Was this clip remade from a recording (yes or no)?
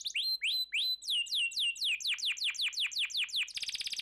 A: no